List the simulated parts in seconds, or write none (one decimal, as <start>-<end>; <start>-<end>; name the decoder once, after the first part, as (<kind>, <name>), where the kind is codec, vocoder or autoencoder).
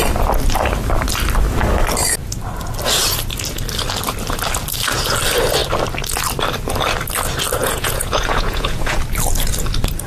7.6-9.0 (vocoder, Vocos)